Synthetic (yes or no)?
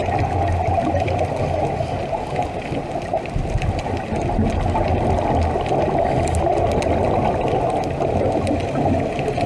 no